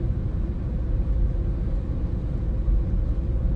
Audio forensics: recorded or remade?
recorded